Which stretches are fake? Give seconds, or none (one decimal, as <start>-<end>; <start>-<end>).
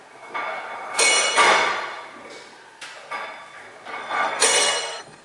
4.0-5.2